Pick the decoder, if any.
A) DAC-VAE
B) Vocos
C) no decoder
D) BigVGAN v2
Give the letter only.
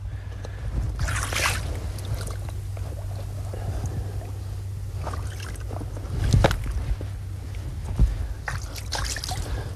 C